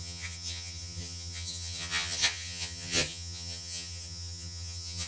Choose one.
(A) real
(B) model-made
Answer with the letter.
B